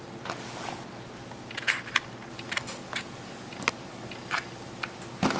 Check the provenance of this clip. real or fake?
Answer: real